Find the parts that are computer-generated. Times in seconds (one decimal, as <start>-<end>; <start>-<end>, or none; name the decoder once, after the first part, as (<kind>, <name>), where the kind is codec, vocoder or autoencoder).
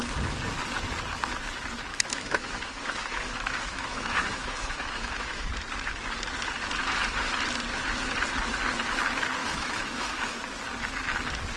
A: 1.9-5.5 (autoencoder, DAC-VAE); 9.4-10.4